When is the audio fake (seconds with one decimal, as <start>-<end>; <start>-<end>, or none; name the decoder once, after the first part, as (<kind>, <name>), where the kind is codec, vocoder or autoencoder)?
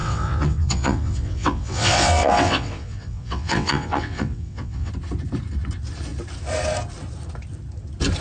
0.0-4.9 (vocoder, WaveNeXt)